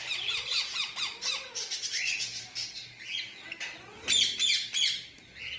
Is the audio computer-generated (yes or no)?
no